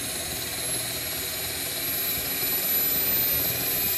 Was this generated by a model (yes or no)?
no